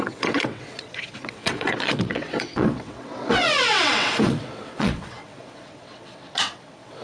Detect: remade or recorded remade